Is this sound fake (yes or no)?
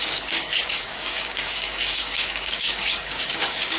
yes